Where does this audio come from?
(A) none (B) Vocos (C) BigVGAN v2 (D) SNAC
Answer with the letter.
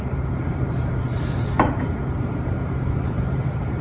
C